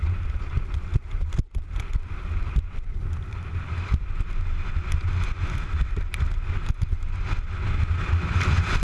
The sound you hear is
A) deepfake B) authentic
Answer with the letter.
B